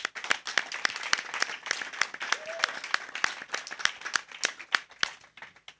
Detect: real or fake real